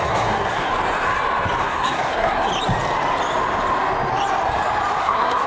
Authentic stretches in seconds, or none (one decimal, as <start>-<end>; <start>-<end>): 0.7-1.6; 2.5-5.0